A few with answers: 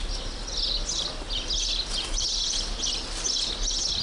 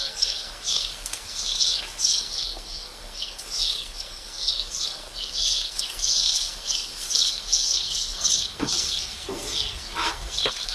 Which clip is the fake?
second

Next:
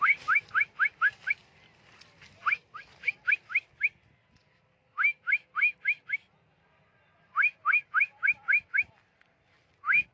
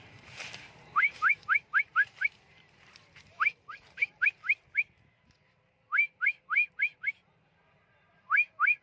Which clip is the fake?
second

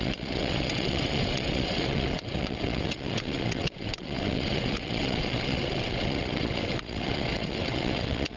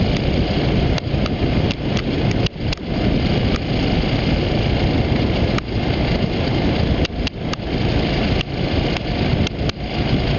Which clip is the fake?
first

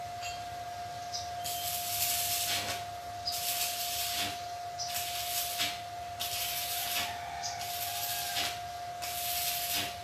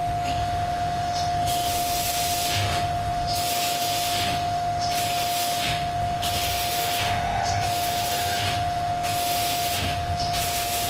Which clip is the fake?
second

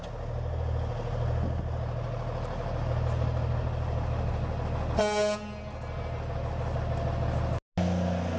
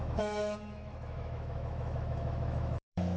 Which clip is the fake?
second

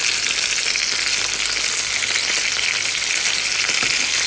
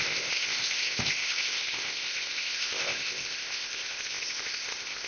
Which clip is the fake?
second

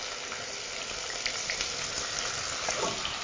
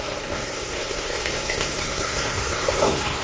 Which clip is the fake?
second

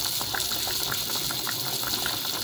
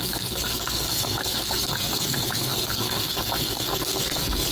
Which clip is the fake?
second